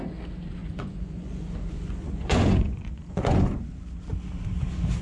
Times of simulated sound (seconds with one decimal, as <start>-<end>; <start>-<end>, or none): 0.6-3.6